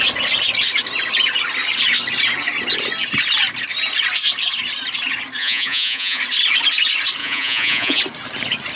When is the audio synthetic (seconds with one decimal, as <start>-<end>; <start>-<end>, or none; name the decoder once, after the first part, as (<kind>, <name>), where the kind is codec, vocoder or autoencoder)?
5.4-6.2 (vocoder, Vocos); 7.2-8.0